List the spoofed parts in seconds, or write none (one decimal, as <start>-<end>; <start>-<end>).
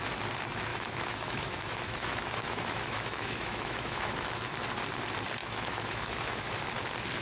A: 0.7-4.7; 5.4-6.5